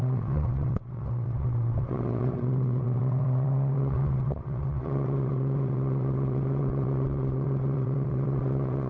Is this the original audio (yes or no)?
no